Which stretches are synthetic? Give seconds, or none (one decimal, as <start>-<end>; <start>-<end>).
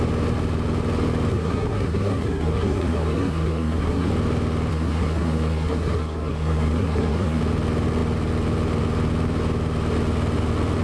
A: 1.3-4.1; 4.7-7.4